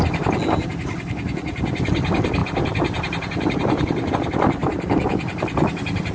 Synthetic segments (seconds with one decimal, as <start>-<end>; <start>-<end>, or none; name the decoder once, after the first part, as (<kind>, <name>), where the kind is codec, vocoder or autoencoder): 2.4-4.1 (vocoder, BigVGAN v2); 4.6-5.2